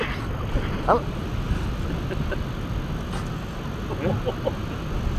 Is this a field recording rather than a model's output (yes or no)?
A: yes